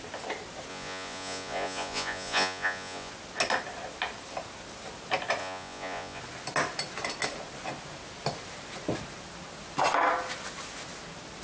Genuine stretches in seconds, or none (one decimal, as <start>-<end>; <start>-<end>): 0.0-0.7; 3.1-5.4; 6.2-11.4